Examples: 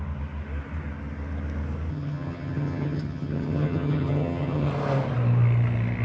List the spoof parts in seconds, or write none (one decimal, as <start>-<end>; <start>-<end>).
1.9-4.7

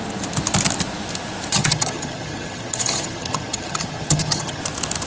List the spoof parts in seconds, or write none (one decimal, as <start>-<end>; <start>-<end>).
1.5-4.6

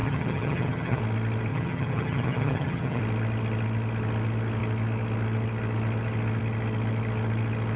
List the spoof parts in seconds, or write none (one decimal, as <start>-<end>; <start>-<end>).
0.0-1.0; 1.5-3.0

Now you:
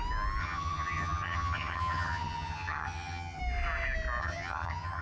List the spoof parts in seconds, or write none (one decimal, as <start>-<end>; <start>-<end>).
0.4-3.4; 4.2-5.0